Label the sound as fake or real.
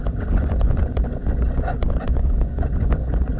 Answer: fake